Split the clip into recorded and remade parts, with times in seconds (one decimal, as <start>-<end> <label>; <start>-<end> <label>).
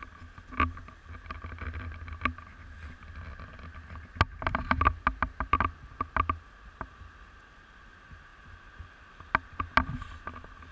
0.0-10.7 recorded